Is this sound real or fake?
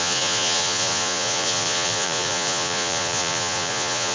fake